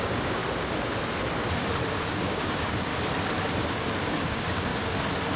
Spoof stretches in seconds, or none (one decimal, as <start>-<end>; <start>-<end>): 0.0-0.4; 1.9-2.9; 3.6-4.7